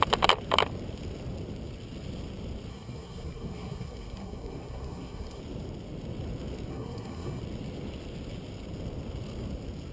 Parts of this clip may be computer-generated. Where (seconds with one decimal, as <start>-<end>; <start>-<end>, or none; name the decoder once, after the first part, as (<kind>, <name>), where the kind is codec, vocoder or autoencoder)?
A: 2.7-5.4 (codec, SNAC); 6.7-7.4